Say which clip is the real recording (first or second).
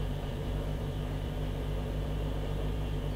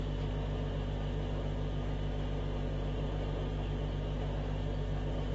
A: second